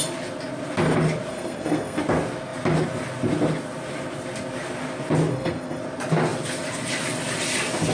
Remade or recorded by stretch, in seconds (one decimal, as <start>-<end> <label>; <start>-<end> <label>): 0.0-1.3 recorded; 1.3-2.0 remade; 2.0-5.3 recorded; 5.3-5.8 remade; 5.8-7.9 recorded